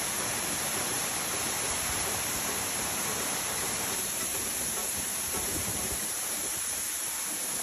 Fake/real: fake